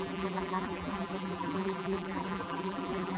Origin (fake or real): fake